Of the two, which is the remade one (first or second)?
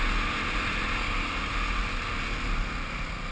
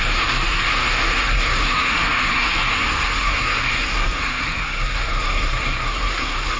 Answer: second